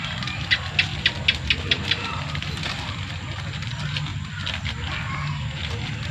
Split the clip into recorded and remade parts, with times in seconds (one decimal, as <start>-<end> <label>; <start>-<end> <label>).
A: 0.0-6.1 recorded